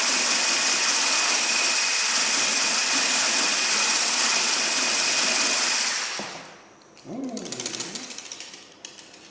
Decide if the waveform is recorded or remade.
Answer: remade